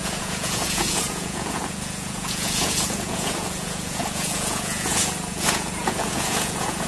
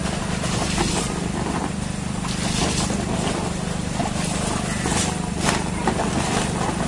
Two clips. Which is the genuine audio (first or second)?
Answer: second